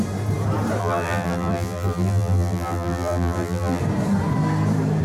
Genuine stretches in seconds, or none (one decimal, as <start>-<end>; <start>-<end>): 0.0-0.8; 3.8-5.0

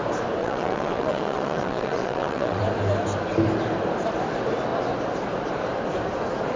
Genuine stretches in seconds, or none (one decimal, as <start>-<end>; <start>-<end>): 0.0-0.4; 2.6-6.6

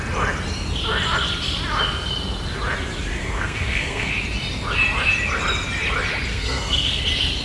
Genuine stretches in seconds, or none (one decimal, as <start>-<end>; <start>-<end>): 0.0-3.2; 4.1-6.3; 7.0-7.4

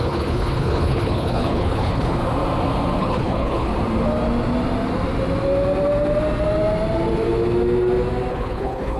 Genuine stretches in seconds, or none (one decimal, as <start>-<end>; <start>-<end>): 2.2-3.0; 3.7-8.3

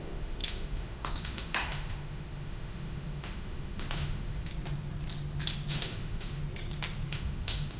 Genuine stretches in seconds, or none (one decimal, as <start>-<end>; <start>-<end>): 4.5-5.7; 6.4-7.1

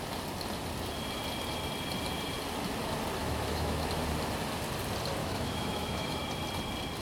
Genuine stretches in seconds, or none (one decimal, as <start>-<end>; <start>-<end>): 0.0-3.2; 3.9-5.2; 6.2-7.0